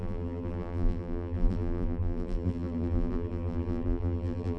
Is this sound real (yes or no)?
no